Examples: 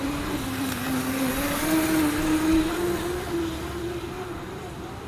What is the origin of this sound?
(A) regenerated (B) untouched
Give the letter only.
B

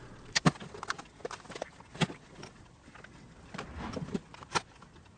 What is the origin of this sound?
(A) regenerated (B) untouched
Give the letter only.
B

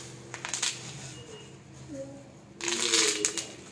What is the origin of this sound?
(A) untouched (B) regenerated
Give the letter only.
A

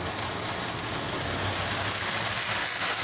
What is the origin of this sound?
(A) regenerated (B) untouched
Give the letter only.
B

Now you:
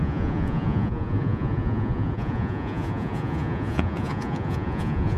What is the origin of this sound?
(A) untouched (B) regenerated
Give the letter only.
B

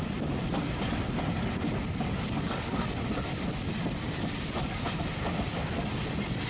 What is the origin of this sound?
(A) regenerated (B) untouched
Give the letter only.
B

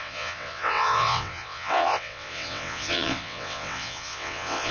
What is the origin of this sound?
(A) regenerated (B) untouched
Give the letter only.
A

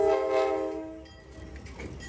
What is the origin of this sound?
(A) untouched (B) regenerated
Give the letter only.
A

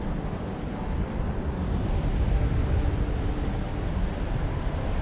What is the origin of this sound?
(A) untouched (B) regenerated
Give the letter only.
A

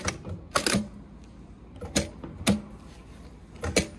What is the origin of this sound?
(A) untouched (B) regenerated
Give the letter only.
A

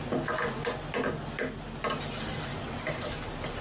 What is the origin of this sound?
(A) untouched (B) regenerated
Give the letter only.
A